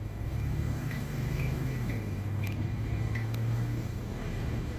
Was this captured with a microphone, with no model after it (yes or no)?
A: no